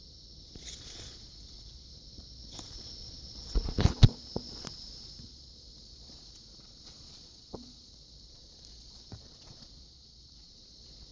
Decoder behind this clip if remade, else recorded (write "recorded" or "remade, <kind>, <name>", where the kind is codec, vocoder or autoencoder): remade, vocoder, Vocos